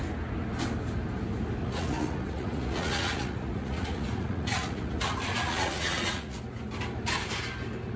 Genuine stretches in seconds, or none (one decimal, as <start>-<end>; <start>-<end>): 0.0-1.6; 6.4-8.0